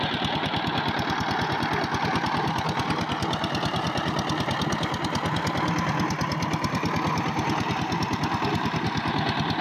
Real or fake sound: real